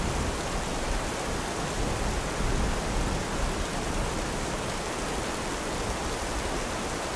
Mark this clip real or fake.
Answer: real